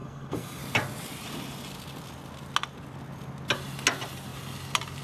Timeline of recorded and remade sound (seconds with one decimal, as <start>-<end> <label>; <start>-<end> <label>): 0.0-0.6 remade; 0.6-5.0 recorded